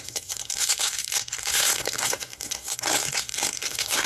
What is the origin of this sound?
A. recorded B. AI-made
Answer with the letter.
B